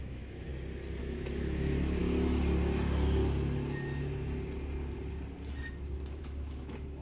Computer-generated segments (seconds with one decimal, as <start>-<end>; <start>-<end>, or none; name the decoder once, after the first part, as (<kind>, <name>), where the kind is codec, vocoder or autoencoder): 0.0-0.5 (autoencoder, DAC-VAE); 1.0-2.0; 6.2-7.0